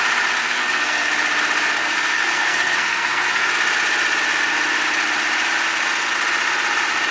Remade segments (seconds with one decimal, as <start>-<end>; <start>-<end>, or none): 0.4-1.1; 1.8-3.5